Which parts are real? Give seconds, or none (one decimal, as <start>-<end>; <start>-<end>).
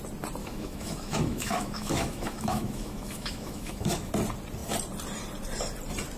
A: 0.0-0.4; 4.1-6.2